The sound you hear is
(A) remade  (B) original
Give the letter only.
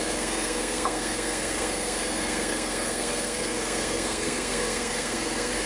A